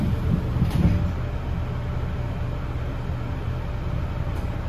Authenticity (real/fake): real